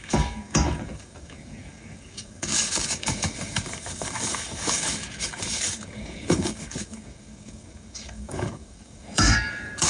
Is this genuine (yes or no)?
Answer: no